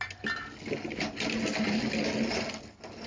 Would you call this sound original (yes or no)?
yes